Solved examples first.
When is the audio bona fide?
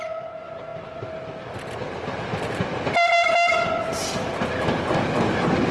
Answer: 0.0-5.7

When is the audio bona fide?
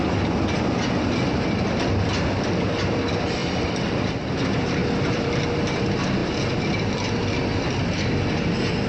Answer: 0.0-3.4; 4.1-4.8; 5.4-6.2; 6.9-8.9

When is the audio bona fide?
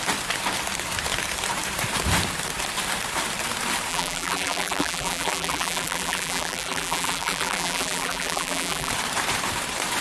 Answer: 0.0-3.9; 8.9-10.0